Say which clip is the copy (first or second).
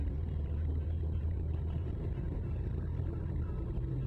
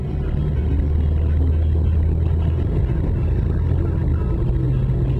first